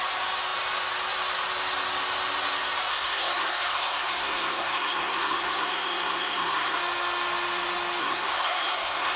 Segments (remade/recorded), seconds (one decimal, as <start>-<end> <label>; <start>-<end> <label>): 0.0-2.9 recorded; 2.9-6.8 remade; 6.8-8.0 recorded; 8.0-9.2 remade